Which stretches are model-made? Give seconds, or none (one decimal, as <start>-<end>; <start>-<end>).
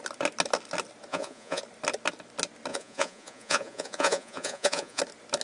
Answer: 1.1-1.6; 2.7-5.0